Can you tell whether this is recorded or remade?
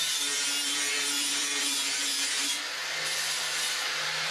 remade